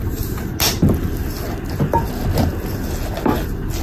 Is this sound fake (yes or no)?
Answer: no